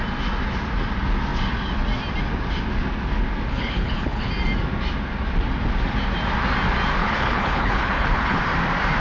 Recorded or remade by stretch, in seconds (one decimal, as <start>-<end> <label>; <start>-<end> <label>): 0.0-3.5 recorded; 3.5-4.3 remade; 4.3-7.0 recorded; 7.0-8.4 remade; 8.4-9.0 recorded